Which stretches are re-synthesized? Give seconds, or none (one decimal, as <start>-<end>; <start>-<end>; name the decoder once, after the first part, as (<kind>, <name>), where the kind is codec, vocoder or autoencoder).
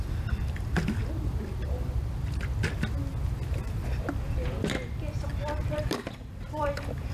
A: 0.0-1.0 (vocoder, BigVGAN v2); 5.3-7.1